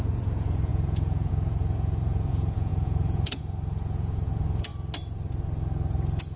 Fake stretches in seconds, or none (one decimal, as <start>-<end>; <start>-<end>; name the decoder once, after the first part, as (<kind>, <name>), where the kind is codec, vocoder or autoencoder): 0.0-4.7 (vocoder, Vocos)